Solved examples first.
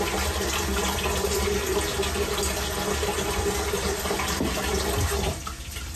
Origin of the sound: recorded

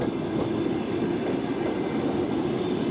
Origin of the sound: recorded